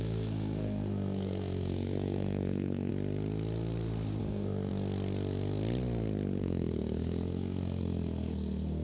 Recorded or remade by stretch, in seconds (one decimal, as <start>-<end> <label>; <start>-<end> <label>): 0.0-2.9 remade; 2.9-4.2 recorded; 4.2-4.7 remade; 4.7-6.4 recorded; 6.4-8.8 remade